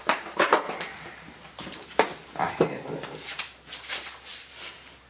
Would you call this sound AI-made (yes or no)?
yes